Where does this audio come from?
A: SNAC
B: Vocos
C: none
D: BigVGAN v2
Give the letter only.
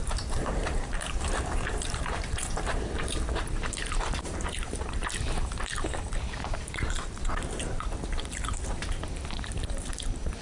D